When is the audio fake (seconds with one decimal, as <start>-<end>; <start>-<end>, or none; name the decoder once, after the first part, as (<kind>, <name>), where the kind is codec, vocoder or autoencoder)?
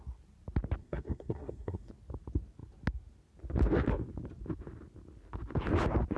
0.8-1.9 (codec, SNAC)